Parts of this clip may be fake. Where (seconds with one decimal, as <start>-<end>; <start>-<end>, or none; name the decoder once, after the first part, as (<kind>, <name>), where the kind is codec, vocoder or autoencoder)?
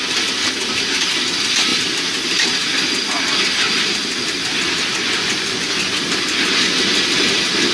5.0-6.0 (vocoder, Vocos)